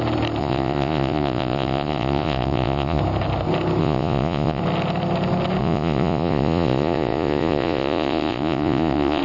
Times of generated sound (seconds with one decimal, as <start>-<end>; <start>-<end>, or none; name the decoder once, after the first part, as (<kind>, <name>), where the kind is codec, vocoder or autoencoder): 0.4-3.0 (vocoder, Vocos); 3.8-4.6; 5.6-9.2